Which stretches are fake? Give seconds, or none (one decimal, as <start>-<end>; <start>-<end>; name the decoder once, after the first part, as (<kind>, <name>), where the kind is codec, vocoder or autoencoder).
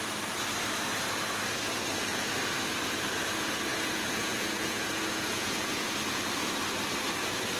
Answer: 3.7-5.9 (vocoder, Vocos)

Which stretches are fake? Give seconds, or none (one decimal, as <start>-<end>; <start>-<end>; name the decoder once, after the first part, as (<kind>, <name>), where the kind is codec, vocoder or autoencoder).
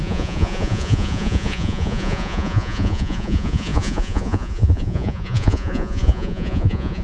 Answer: 0.0-7.0 (vocoder, Vocos)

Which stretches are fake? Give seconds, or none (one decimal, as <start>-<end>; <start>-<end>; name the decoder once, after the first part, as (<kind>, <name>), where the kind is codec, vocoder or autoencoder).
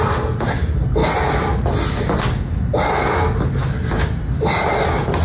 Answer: none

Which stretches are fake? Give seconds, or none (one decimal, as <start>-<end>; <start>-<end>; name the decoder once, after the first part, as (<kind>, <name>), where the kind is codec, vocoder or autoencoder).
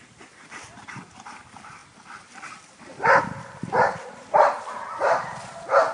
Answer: 0.0-5.9 (vocoder, BigVGAN v2)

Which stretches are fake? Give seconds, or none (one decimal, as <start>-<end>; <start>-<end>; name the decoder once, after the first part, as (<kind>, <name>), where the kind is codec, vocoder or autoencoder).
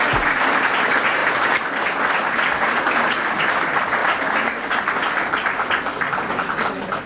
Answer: 4.0-4.8 (vocoder, BigVGAN v2)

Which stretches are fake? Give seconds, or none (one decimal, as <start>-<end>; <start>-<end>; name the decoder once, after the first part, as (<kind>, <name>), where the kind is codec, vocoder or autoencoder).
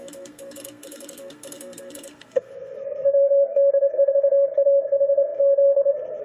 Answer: 0.0-6.2 (codec, SNAC)